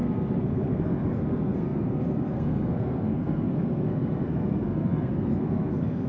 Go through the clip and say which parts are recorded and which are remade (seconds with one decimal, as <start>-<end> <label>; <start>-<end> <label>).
0.0-6.1 remade